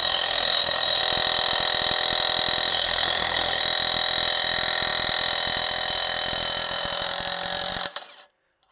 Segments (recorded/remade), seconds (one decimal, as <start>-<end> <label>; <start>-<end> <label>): 0.0-1.0 remade; 1.0-2.7 recorded; 2.7-3.6 remade; 3.6-8.7 recorded